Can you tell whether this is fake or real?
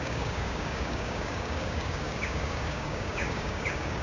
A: fake